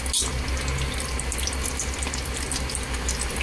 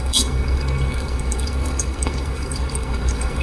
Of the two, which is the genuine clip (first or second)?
first